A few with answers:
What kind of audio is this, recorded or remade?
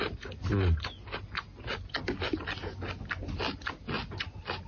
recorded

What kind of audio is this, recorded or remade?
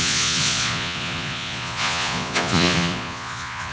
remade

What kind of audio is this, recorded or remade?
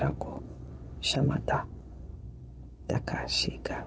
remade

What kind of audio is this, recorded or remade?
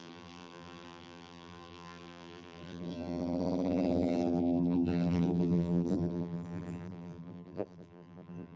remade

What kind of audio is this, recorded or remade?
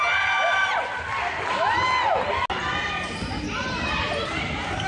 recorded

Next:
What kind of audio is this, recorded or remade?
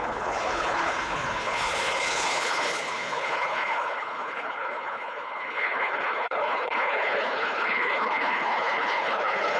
remade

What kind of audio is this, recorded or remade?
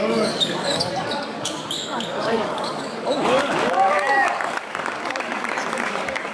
remade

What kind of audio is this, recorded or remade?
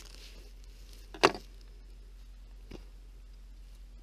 recorded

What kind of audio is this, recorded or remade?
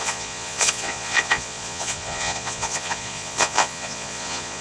remade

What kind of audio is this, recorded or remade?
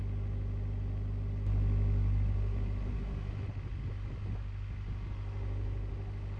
recorded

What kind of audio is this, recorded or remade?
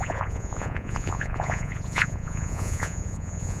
remade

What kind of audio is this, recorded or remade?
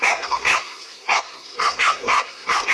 remade